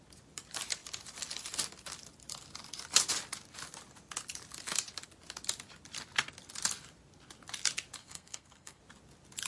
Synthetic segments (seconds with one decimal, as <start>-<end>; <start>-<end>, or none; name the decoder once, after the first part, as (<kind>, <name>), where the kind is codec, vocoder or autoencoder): 8.0-8.8 (codec, SNAC)